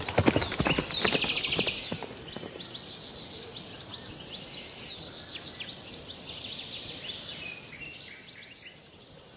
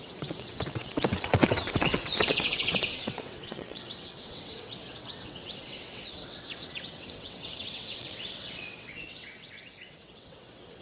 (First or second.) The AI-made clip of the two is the second